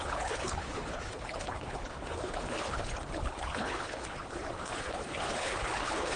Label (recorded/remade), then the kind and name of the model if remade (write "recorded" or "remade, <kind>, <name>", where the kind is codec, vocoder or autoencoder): remade, codec, HILCodec